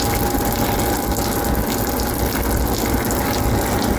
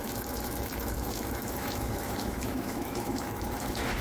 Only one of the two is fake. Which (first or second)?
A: second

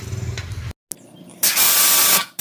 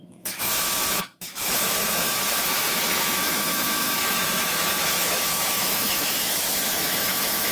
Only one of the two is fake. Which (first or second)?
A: second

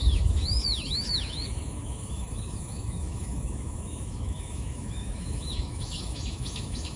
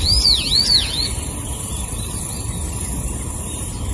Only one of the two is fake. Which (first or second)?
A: first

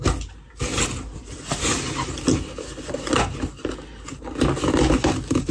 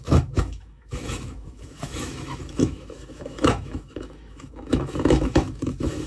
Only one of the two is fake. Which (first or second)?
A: second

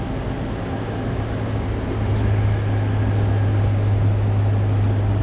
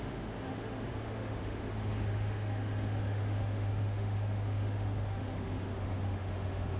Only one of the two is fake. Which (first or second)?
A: second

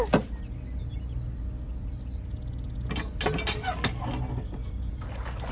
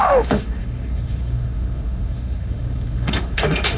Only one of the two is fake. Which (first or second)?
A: second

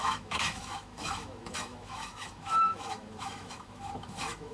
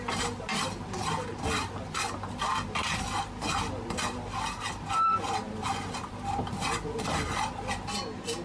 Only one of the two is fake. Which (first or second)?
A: first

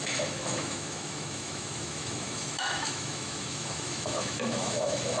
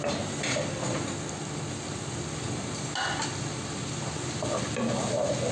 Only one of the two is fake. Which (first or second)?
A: first